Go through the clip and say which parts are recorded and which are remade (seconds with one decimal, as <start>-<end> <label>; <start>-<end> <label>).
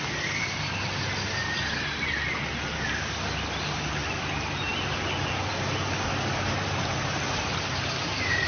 0.0-8.5 recorded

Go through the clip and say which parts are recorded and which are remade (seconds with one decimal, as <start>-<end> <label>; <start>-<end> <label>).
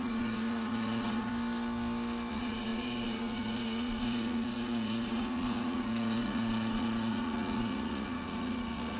0.0-1.3 remade; 1.3-2.3 recorded; 2.3-9.0 remade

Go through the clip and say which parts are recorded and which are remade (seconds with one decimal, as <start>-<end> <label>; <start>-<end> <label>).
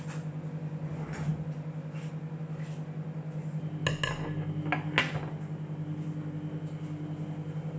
0.0-7.8 recorded